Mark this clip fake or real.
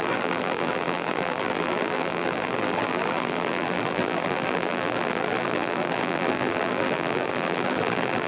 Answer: fake